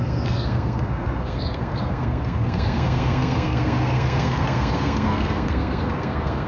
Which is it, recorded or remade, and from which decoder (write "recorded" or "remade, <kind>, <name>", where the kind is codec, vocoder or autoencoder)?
remade, codec, SNAC